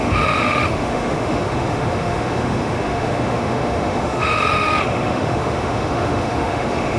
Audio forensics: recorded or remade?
remade